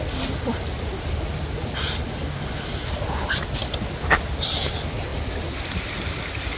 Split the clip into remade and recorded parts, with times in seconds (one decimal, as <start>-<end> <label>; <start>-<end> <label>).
0.0-6.6 recorded

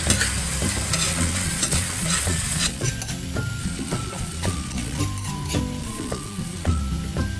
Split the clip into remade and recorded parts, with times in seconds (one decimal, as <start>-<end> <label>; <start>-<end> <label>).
0.0-1.1 recorded; 1.1-2.9 remade; 2.9-3.6 recorded; 3.6-5.0 remade; 5.0-5.8 recorded; 5.8-6.8 remade; 6.8-7.4 recorded

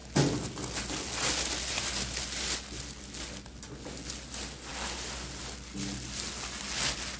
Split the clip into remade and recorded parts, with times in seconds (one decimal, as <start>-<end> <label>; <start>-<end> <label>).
0.0-7.2 recorded